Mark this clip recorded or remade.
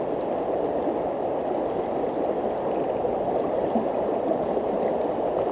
recorded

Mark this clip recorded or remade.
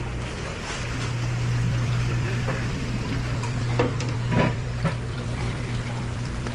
remade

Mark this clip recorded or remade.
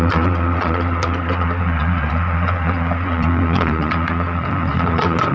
remade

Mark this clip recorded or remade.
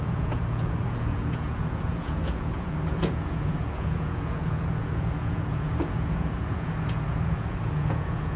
remade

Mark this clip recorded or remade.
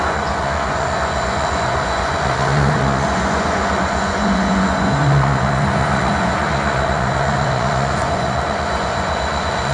remade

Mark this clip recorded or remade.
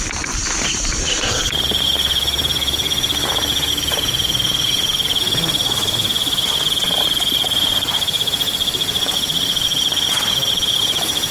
remade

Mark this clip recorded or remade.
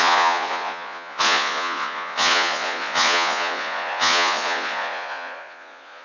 remade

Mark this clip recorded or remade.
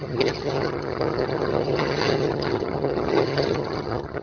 remade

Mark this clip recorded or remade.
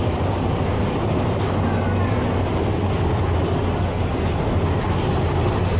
recorded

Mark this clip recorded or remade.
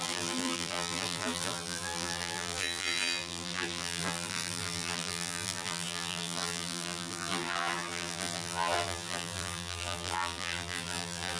remade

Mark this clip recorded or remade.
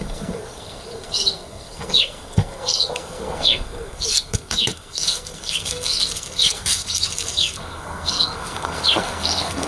remade